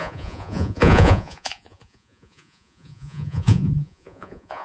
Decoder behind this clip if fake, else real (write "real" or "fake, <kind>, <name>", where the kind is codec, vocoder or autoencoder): fake, vocoder, Vocos